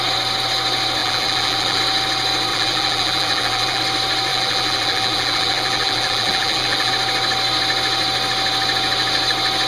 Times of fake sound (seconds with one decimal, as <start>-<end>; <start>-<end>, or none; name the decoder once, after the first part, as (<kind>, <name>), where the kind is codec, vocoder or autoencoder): 1.0-1.8 (vocoder, BigVGAN v2); 2.5-3.8; 4.3-6.9